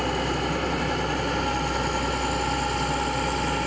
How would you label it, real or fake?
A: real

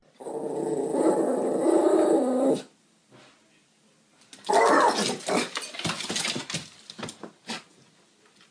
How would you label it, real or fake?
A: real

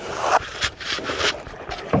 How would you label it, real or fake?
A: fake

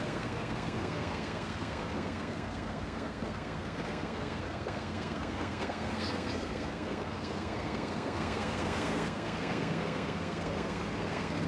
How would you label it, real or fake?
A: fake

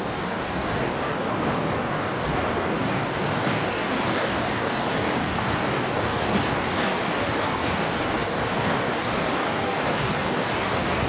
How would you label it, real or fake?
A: fake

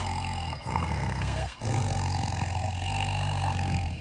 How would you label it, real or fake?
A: fake